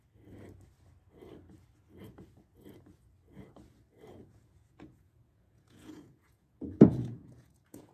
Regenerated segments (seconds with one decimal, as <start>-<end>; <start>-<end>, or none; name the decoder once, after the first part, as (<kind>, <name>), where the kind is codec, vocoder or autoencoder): 4.2-7.9 (vocoder, Vocos)